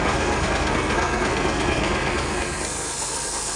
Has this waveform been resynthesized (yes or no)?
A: yes